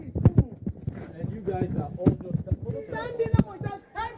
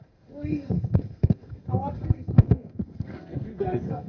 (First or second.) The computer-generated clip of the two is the second